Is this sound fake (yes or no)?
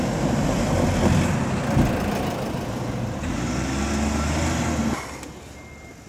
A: no